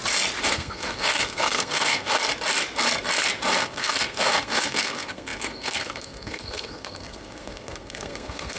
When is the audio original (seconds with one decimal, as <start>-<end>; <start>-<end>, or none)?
0.0-0.5; 2.3-3.6